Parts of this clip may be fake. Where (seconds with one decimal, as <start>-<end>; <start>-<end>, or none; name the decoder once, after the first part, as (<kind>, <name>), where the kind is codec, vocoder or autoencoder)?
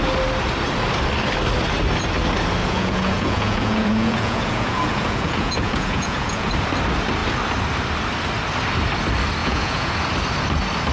2.6-6.5 (vocoder, Vocos); 9.4-9.9